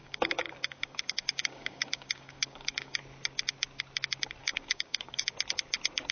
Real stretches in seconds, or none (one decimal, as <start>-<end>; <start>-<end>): 3.0-4.4; 5.2-6.1